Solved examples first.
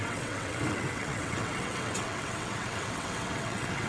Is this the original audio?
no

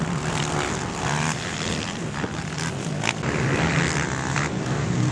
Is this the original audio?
yes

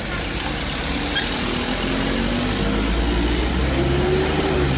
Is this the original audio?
yes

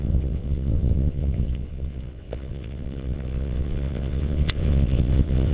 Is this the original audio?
no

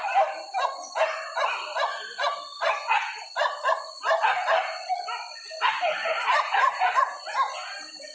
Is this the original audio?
yes